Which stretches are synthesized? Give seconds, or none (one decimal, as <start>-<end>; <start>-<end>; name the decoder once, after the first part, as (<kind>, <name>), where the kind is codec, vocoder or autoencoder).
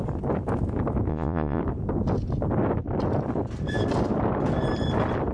1.1-1.6 (vocoder, Vocos)